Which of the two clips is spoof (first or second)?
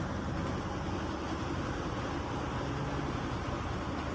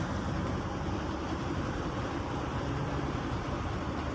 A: second